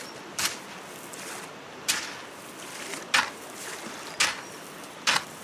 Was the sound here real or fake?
real